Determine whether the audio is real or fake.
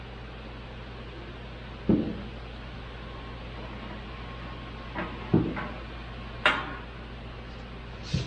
real